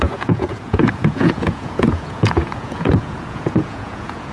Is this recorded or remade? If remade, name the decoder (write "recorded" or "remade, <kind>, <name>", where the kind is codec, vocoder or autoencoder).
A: remade, vocoder, Vocos